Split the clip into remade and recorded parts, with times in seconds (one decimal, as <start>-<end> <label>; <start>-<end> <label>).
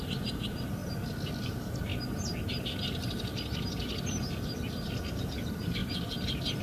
0.0-0.8 remade; 0.8-1.4 recorded; 1.4-1.9 remade; 1.9-2.4 recorded; 2.4-3.3 remade; 3.3-5.1 recorded; 5.1-6.6 remade